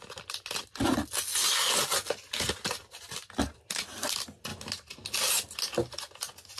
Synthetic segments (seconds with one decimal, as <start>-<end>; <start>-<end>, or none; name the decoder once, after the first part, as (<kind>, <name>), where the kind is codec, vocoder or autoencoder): none